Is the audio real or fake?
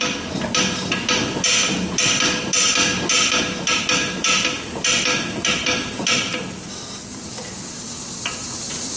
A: real